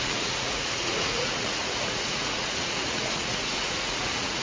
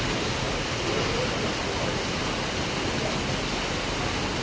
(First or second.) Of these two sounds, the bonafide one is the second